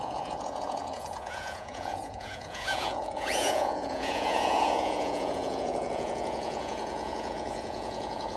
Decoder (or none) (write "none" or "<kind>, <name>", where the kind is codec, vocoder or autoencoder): vocoder, Vocos